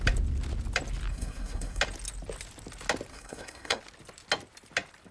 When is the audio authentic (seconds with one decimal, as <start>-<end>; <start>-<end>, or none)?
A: 0.0-1.1; 1.8-3.1; 3.8-5.1